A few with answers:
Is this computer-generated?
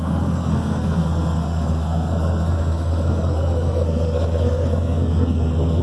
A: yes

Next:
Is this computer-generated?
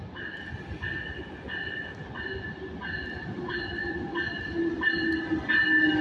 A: no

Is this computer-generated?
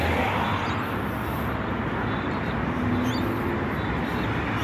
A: no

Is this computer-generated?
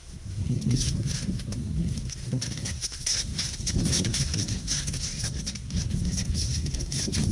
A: yes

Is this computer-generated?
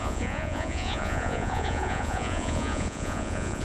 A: yes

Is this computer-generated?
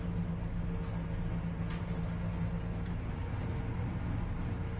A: no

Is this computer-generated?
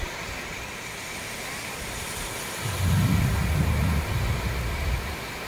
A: no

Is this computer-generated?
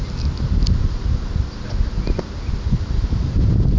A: no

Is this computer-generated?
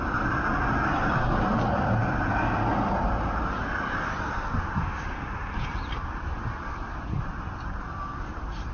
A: yes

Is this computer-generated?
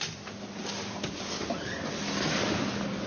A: no